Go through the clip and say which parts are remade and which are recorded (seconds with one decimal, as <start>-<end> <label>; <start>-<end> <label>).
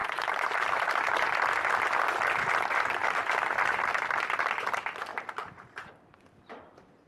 0.0-0.9 remade; 0.9-5.1 recorded; 5.1-5.9 remade; 5.9-7.1 recorded